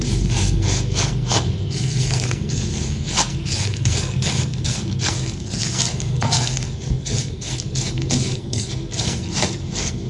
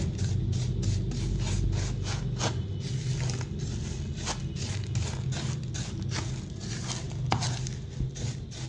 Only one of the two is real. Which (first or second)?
second